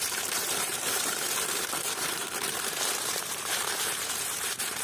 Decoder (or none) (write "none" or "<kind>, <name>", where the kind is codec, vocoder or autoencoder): vocoder, BigVGAN v2